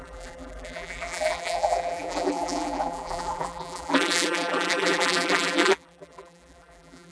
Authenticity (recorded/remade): remade